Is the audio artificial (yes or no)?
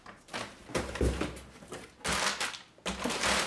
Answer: no